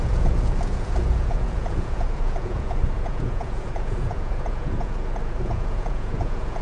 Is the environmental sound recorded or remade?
remade